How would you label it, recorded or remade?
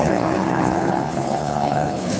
remade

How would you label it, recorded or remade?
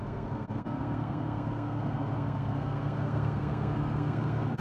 remade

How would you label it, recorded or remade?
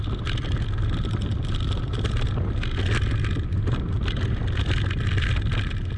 recorded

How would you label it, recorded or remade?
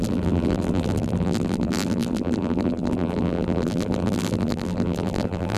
remade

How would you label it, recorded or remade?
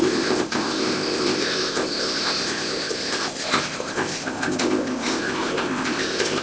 remade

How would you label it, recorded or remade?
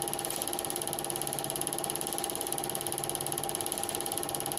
recorded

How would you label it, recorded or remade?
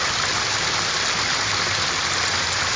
recorded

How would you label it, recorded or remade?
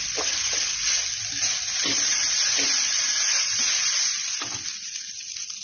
recorded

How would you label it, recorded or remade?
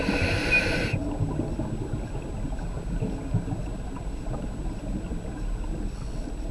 recorded